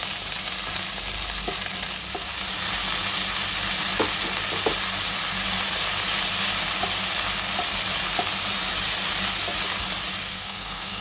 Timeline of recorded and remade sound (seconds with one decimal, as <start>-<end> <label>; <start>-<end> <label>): 0.0-10.2 recorded; 10.2-11.0 remade

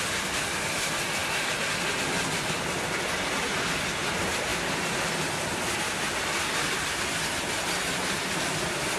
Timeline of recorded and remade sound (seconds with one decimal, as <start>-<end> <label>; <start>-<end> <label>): 0.0-9.0 recorded

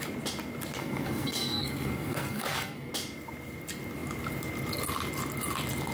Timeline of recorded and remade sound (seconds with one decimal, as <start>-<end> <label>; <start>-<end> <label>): 0.0-0.8 recorded; 0.8-2.9 remade; 2.9-5.9 recorded